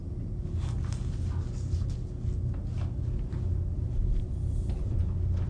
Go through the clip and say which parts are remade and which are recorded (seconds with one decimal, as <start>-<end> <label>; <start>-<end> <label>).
0.0-5.5 recorded